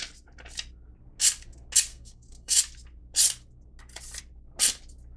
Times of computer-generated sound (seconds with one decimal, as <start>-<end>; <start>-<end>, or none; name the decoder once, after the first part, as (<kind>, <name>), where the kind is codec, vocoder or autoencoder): 1.9-2.6 (codec, SNAC)